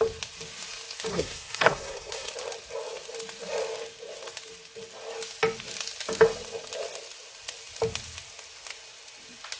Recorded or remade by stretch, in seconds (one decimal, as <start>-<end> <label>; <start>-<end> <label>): 0.0-1.1 recorded; 1.1-2.3 remade; 2.3-9.6 recorded